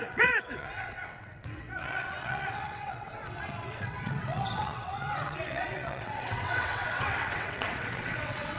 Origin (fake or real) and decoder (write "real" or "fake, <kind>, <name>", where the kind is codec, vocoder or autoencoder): fake, vocoder, WaveNeXt